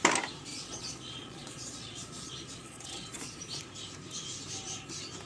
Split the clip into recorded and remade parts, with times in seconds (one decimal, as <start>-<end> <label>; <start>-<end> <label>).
0.0-0.5 recorded; 0.5-3.6 remade; 3.6-5.3 recorded